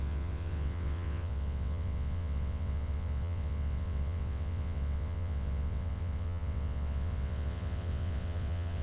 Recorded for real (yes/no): no